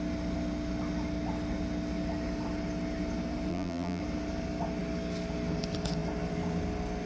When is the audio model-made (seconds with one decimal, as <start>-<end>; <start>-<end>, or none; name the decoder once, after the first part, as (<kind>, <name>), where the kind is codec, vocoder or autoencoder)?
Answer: 3.5-4.0 (vocoder, BigVGAN v2)